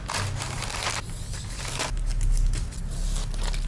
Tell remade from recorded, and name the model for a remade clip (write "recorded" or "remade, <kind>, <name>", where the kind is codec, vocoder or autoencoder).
recorded